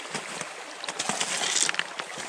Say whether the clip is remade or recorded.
recorded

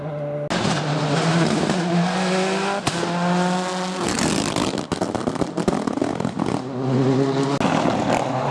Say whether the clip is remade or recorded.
recorded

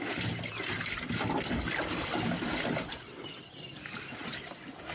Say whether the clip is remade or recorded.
recorded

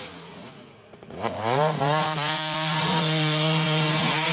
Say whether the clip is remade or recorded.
remade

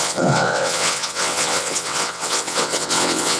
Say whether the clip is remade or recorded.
remade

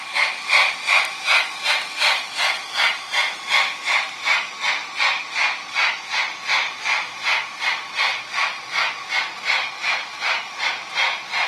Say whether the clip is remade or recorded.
recorded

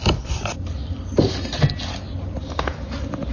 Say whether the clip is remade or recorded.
recorded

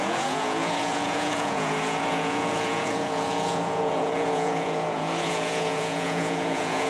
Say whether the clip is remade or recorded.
remade